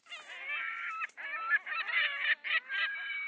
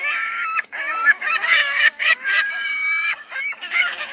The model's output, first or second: second